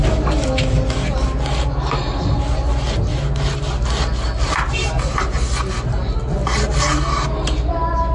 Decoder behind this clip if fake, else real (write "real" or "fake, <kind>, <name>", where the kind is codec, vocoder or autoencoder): real